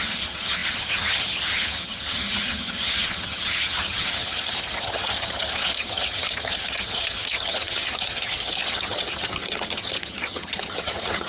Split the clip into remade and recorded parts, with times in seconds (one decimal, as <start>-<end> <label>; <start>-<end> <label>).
0.0-11.3 remade